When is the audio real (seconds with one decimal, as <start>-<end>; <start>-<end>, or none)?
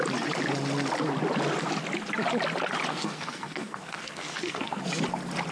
0.0-2.9; 4.8-5.5